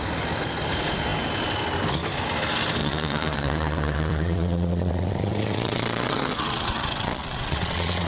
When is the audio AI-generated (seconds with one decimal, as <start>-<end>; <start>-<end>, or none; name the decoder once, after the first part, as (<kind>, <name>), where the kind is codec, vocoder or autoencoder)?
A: 2.8-8.1 (vocoder, WaveNeXt)